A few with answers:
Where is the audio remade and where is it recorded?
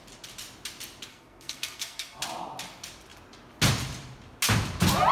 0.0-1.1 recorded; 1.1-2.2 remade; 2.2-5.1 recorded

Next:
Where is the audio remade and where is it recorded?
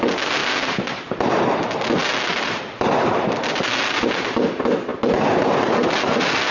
0.0-6.5 recorded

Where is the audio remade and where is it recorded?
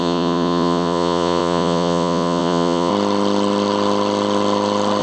0.0-2.9 remade; 2.9-5.0 recorded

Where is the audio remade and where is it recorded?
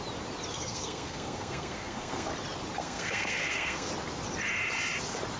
0.0-0.5 recorded; 0.5-2.3 remade; 2.3-2.8 recorded; 2.8-3.9 remade; 3.9-5.4 recorded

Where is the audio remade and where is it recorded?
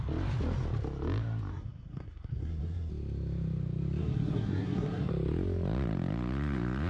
0.0-1.5 recorded; 1.5-2.9 remade; 2.9-4.0 recorded; 4.0-5.1 remade; 5.1-6.9 recorded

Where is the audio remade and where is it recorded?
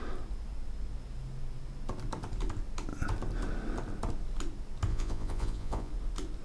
0.0-4.9 recorded; 4.9-5.9 remade; 5.9-6.4 recorded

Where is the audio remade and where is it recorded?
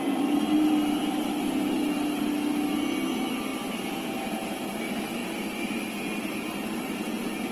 0.0-7.5 recorded